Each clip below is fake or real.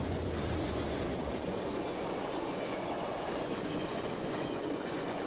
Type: fake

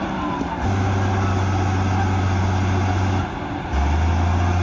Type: real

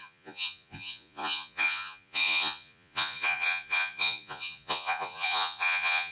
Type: fake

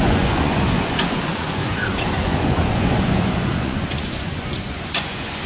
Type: fake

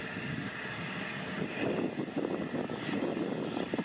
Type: real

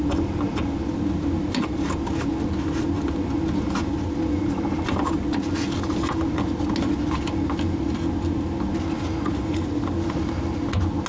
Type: real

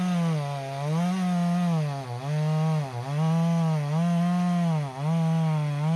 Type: real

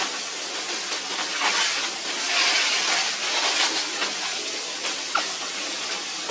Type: real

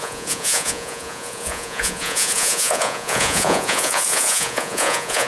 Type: fake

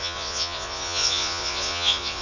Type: fake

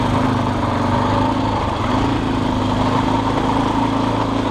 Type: real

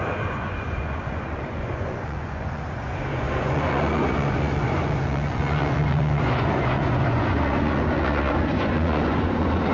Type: fake